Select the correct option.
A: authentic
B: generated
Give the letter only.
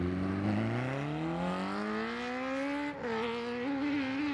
A